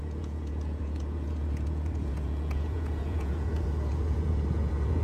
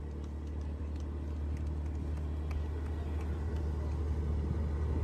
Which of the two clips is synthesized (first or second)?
first